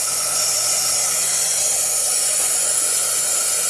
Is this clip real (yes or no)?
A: no